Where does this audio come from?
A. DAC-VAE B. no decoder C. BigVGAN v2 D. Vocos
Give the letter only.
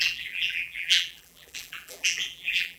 C